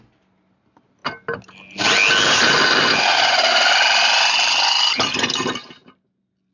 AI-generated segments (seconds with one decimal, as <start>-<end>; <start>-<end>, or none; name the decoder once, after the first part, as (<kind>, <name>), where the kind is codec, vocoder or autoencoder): none